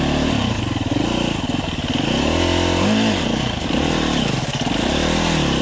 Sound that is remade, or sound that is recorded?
recorded